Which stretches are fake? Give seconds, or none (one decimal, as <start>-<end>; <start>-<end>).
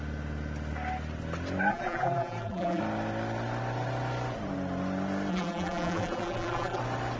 1.7-2.8; 5.3-6.8